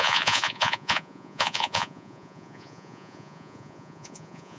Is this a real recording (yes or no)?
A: no